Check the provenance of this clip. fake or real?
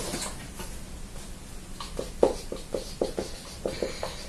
real